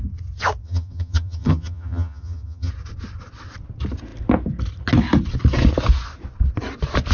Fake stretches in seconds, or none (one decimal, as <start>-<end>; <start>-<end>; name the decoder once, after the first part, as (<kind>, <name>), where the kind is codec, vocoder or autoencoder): 0.6-2.7 (vocoder, HiFi-GAN)